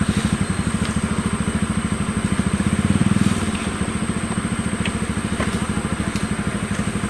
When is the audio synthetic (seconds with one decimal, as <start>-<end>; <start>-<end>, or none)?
none